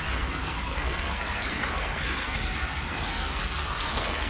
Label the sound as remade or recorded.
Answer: remade